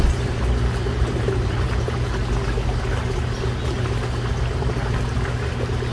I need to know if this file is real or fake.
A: real